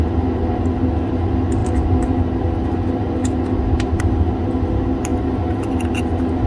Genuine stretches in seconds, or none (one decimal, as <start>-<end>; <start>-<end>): 0.0-6.5